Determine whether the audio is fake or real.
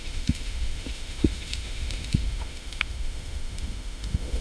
fake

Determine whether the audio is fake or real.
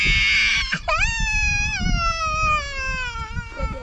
real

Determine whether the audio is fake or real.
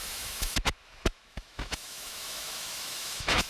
fake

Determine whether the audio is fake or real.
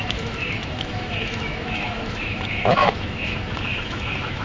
fake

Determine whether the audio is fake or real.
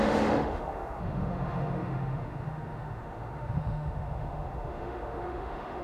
fake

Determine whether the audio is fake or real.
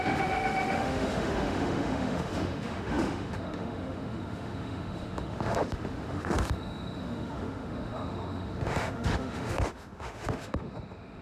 fake